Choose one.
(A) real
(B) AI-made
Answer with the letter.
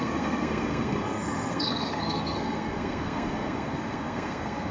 B